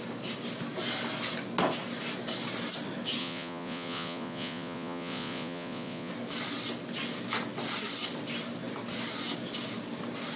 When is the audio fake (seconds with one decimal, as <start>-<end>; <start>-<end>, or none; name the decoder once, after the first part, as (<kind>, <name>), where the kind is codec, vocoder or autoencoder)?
3.2-6.1 (vocoder, Vocos)

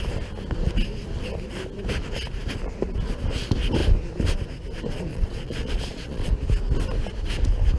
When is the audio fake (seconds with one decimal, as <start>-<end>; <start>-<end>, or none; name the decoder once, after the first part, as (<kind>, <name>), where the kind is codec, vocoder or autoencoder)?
5.1-6.3 (vocoder, Vocos)

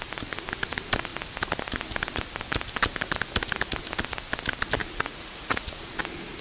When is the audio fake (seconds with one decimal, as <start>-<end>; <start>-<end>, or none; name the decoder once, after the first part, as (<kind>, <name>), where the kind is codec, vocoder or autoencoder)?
4.8-6.0 (vocoder, Vocos)

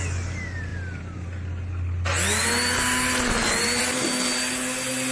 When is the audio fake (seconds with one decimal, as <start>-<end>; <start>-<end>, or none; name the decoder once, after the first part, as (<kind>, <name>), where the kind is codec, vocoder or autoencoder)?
none

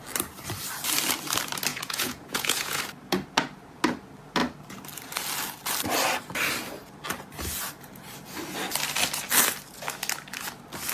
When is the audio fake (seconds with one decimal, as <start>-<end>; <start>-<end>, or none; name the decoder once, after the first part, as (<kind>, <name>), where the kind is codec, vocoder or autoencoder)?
1.7-2.8 (vocoder, Vocos)

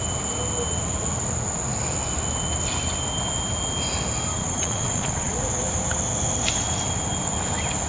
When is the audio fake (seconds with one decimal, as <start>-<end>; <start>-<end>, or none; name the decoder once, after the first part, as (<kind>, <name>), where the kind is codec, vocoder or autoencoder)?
4.3-5.3 (vocoder, Vocos)

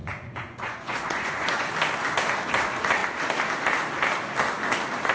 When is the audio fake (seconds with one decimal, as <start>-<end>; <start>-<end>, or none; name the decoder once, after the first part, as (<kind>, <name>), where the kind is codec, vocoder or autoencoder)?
0.0-1.7 (vocoder, Vocos)

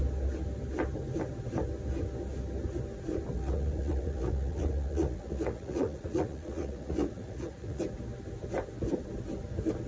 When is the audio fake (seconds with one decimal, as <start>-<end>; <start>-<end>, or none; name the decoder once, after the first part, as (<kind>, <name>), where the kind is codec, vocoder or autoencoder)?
3.3-7.8 (vocoder, Vocos)